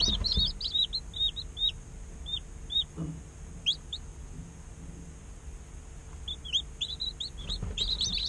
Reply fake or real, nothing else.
real